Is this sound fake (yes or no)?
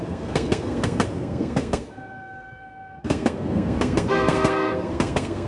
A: yes